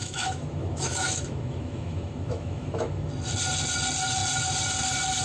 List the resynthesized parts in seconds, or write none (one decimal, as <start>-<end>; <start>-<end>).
0.0-3.1